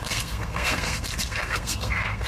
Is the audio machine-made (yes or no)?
yes